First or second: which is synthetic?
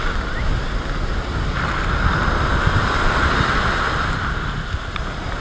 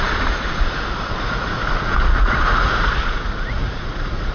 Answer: second